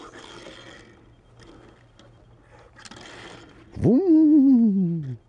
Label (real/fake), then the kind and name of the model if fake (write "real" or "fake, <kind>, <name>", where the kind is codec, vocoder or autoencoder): real